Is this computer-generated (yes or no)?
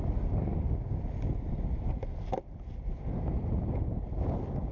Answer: no